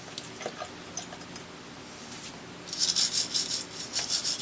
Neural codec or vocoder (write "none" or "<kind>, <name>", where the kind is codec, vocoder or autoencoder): none